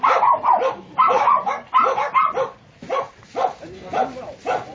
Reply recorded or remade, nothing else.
recorded